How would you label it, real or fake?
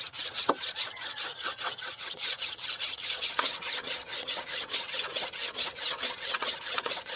fake